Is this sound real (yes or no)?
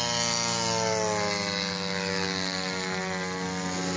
yes